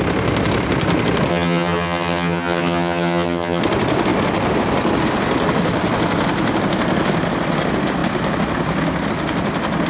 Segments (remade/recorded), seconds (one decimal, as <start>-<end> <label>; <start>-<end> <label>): 0.0-1.3 recorded; 1.3-3.6 remade; 3.6-9.9 recorded